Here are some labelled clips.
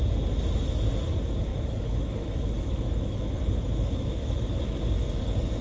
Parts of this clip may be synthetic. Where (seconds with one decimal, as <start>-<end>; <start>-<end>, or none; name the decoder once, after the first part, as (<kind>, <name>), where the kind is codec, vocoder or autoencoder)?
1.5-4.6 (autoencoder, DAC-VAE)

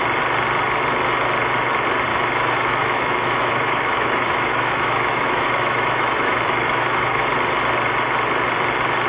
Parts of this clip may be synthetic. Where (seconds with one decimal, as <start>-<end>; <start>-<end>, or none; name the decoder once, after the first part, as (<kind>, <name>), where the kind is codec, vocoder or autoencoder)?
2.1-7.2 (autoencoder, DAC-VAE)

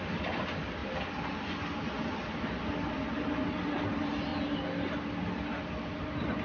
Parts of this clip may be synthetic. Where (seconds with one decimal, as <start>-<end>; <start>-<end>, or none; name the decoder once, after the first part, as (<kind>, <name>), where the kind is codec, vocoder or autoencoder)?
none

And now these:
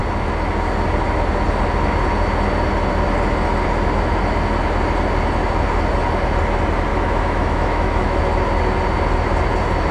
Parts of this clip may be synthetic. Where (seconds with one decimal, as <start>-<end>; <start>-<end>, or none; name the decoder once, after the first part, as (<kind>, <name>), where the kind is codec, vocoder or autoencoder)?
6.9-8.2 (autoencoder, DAC-VAE)

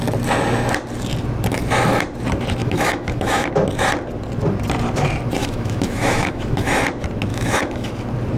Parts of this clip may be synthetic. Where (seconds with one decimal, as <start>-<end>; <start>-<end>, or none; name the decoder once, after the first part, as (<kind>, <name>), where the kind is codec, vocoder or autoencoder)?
2.6-3.5 (autoencoder, DAC-VAE); 5.4-6.8; 7.3-7.9